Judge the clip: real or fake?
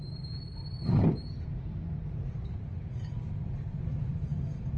fake